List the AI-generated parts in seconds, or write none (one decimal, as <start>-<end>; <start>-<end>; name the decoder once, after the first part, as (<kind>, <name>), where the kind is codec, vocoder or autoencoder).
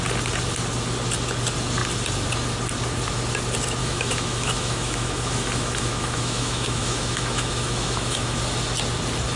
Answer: 3.8-8.4 (autoencoder, DAC-VAE)